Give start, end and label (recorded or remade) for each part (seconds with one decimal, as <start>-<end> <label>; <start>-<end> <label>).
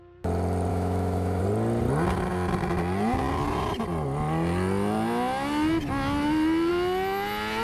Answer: 0.0-0.7 recorded; 0.7-1.4 remade; 1.4-7.6 recorded